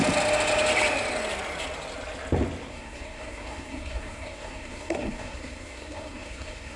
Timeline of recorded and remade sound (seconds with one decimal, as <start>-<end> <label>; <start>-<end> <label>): 0.0-2.7 recorded; 2.7-6.8 remade